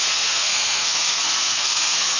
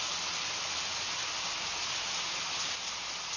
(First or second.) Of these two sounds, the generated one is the first